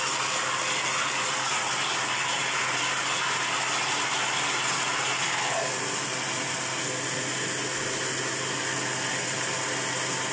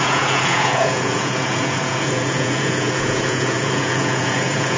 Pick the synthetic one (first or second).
second